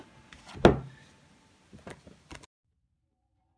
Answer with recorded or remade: recorded